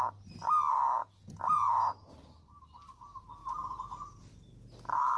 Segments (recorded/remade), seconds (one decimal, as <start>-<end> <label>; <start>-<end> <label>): 0.0-1.0 recorded; 1.0-1.9 remade; 1.9-3.4 recorded; 3.4-4.3 remade; 4.3-5.2 recorded